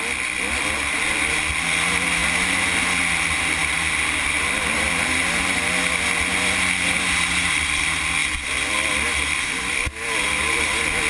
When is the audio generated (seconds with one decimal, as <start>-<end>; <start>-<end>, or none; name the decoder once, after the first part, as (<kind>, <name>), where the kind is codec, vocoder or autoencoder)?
none